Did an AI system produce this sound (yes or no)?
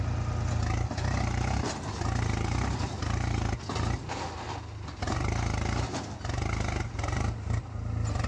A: no